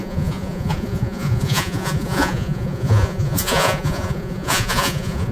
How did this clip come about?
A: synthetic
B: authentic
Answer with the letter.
A